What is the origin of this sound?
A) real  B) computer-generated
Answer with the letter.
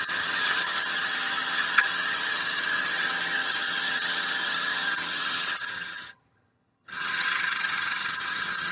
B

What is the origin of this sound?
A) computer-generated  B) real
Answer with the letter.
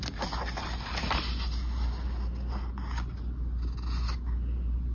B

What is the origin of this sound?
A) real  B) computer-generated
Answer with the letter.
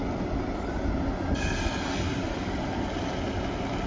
A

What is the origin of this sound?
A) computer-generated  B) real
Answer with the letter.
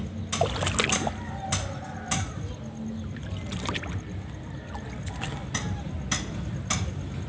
B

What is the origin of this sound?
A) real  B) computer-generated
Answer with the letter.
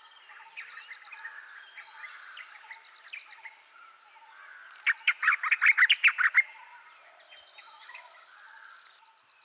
A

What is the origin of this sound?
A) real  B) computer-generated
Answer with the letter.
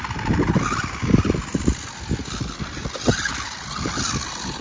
A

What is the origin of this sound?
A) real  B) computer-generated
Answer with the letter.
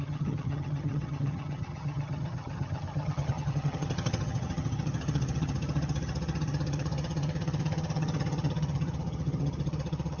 B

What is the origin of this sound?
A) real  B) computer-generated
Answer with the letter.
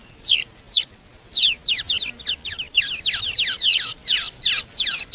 A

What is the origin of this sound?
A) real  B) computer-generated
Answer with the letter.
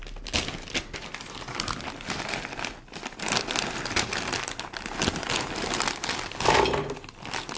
A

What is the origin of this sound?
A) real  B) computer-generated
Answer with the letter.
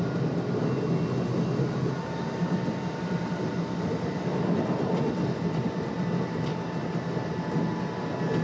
A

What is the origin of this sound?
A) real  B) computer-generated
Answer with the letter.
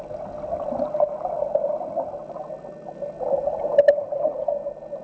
A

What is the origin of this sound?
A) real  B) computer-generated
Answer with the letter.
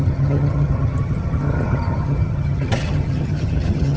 B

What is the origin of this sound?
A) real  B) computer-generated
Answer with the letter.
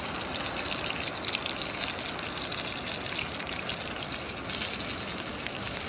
A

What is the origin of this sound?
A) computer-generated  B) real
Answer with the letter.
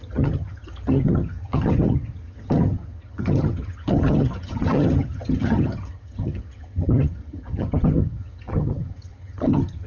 A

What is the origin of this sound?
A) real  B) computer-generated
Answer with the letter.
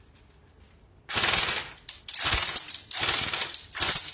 A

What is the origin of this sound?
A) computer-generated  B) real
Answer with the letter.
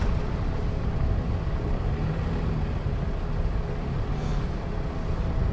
B